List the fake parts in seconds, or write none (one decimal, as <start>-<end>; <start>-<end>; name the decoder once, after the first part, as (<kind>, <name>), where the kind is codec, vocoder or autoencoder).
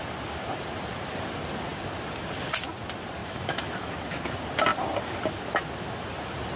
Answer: 3.2-3.9 (autoencoder, DAC-VAE)